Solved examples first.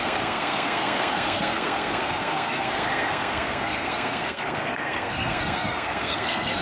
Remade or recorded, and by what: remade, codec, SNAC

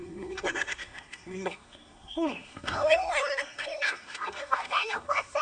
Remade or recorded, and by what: remade, codec, SNAC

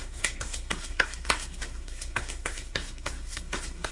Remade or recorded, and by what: remade, codec, SNAC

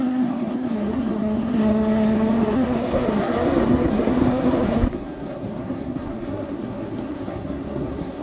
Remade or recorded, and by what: remade, codec, SNAC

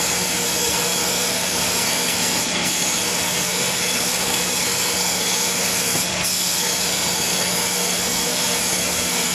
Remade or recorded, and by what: remade, codec, SNAC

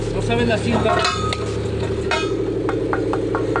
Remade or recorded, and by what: recorded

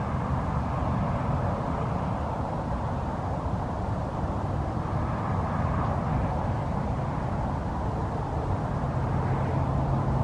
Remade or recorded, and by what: recorded